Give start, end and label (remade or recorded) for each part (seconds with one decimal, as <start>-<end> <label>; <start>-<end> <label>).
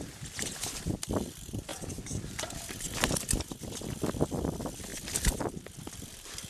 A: 0.0-1.7 remade; 1.7-4.1 recorded; 4.1-6.5 remade